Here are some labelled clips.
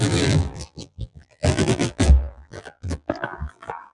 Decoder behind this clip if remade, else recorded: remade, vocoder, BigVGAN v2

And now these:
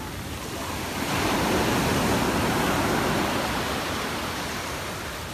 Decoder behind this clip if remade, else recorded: recorded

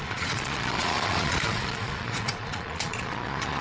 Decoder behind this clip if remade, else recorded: remade, vocoder, Vocos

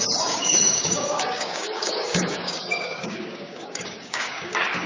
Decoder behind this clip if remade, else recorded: remade, codec, DAC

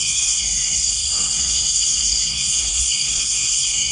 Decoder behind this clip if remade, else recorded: remade, codec, SNAC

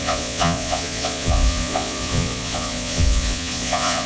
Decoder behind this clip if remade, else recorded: remade, vocoder, Vocos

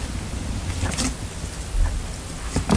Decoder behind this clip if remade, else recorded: recorded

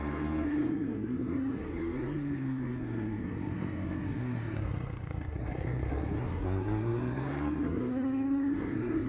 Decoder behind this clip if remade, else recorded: remade, codec, SNAC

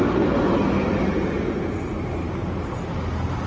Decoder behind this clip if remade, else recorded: recorded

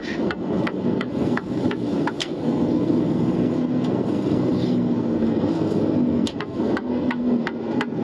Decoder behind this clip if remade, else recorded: remade, codec, SNAC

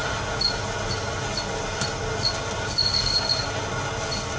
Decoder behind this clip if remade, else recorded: recorded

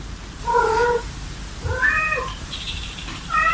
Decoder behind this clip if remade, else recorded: remade, vocoder, BigVGAN v2